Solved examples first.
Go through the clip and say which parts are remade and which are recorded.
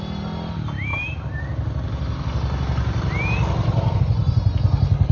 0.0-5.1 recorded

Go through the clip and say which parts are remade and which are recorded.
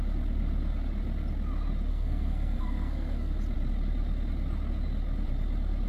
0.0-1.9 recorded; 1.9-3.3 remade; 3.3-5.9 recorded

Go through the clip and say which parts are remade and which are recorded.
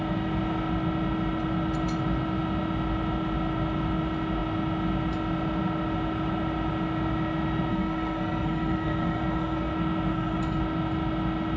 0.0-7.7 recorded; 7.7-9.7 remade; 9.7-10.1 recorded; 10.1-10.6 remade; 10.6-11.6 recorded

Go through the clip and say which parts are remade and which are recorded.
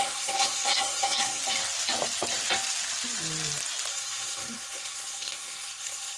0.0-1.4 remade; 1.4-3.9 recorded; 3.9-6.2 remade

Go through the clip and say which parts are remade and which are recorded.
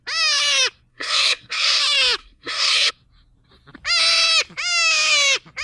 0.0-0.9 recorded; 0.9-1.8 remade; 1.8-2.2 recorded; 2.2-2.9 remade; 2.9-5.6 recorded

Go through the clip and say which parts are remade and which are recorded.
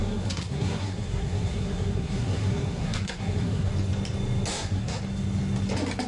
0.0-3.7 remade; 3.7-4.5 recorded; 4.5-5.0 remade; 5.0-6.1 recorded